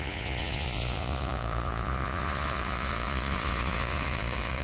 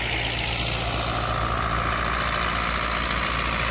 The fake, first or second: first